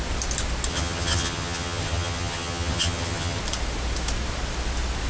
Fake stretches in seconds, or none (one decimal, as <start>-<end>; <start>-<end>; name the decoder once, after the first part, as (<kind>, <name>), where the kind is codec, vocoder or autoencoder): 0.7-3.4 (vocoder, HiFi-GAN)